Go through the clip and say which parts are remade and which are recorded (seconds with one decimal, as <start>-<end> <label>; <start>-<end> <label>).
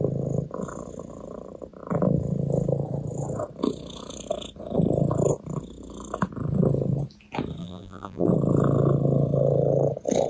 0.0-7.6 recorded; 7.6-8.3 remade; 8.3-10.3 recorded